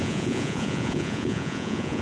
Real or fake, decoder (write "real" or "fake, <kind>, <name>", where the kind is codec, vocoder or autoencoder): fake, vocoder, Vocos